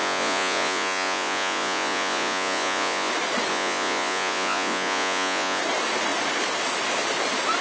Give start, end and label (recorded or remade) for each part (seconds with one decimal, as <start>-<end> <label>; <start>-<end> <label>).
0.0-3.1 remade; 3.1-3.5 recorded; 3.5-5.6 remade; 5.6-7.6 recorded